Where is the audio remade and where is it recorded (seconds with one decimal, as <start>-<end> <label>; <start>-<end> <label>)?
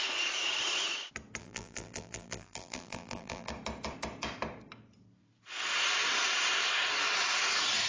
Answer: 0.0-1.4 recorded; 1.4-3.5 remade; 3.5-7.9 recorded